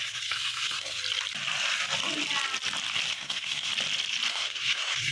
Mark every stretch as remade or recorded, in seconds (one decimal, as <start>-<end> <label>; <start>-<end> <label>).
0.0-1.0 remade; 1.0-3.1 recorded; 3.1-3.7 remade; 3.7-4.3 recorded; 4.3-5.1 remade